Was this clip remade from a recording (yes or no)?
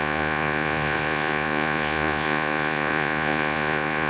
yes